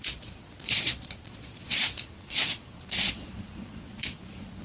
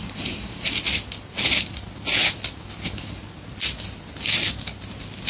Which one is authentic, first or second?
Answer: second